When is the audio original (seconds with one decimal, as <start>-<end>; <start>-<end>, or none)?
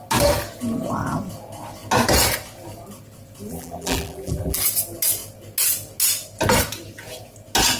0.0-3.5; 4.6-7.8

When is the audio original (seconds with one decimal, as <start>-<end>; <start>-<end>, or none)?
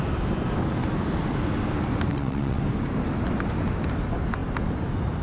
0.0-2.1; 2.6-5.2